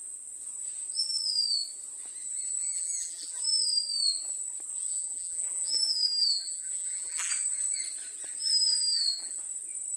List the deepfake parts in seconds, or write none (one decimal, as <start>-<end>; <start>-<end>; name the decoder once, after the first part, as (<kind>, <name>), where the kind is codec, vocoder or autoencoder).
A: 2.6-3.4 (vocoder, BigVGAN v2); 4.9-7.3; 8.8-9.4